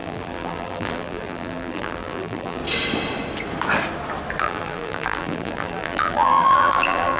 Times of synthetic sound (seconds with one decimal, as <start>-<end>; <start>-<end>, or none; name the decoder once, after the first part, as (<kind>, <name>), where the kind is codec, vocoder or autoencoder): 0.0-2.6 (vocoder, BigVGAN v2); 4.4-7.2